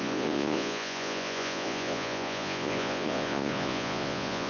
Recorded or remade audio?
remade